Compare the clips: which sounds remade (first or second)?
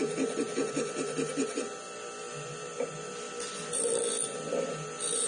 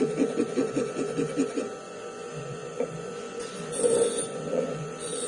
second